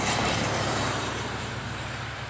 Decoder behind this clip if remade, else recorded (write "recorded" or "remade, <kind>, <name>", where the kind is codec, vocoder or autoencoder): remade, vocoder, BigVGAN v2